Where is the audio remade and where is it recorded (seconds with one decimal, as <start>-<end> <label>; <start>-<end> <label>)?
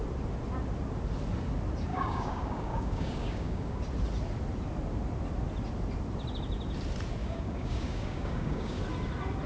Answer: 0.0-1.9 recorded; 1.9-3.8 remade; 3.8-7.2 recorded; 7.2-8.8 remade; 8.8-9.5 recorded